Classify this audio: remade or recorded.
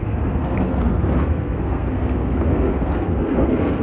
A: remade